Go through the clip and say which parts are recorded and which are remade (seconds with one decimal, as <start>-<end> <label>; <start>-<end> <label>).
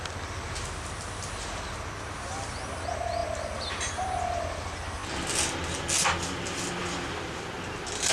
0.0-8.1 recorded